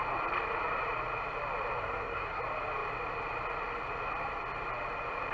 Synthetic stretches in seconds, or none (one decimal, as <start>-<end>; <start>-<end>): 1.8-2.4